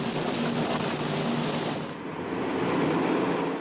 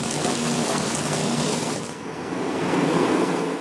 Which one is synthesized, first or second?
second